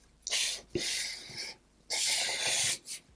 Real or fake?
real